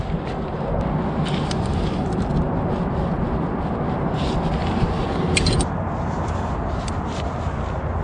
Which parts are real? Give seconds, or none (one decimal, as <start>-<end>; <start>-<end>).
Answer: 0.0-8.0